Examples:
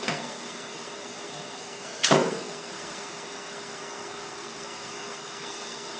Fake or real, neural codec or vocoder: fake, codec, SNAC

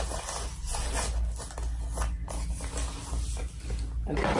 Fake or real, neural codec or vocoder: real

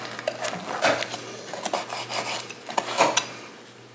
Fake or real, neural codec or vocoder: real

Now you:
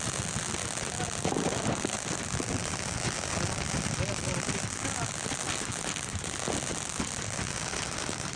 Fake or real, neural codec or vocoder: real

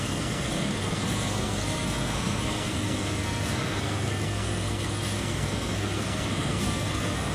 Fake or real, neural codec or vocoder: fake, codec, SNAC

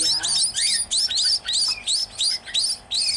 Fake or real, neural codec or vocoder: real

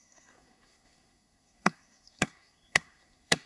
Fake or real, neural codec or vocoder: fake, codec, SNAC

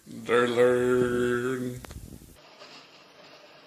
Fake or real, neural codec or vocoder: real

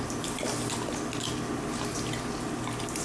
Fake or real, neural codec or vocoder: real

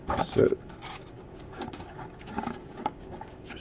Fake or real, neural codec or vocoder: fake, codec, DAC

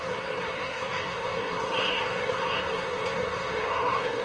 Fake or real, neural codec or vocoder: fake, codec, SNAC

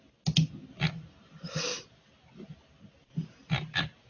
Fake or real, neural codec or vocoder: real